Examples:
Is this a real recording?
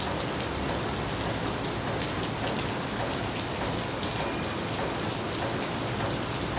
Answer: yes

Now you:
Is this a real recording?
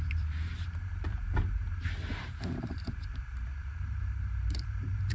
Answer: no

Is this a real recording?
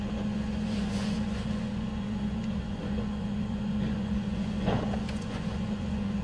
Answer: no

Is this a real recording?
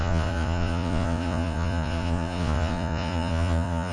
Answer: no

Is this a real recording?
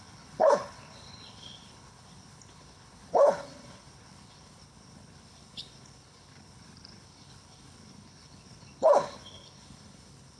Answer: no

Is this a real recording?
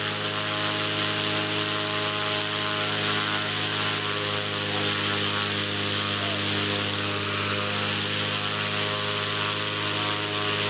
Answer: yes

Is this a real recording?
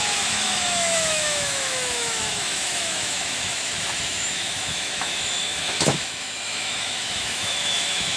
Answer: no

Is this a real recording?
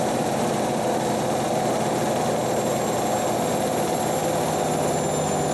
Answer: yes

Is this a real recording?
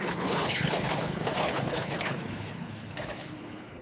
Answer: no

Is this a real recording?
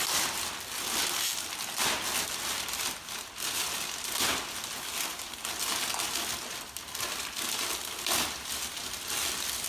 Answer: yes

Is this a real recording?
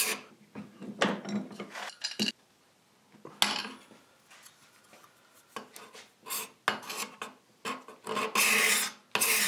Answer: yes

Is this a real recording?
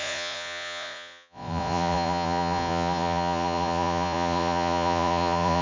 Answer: no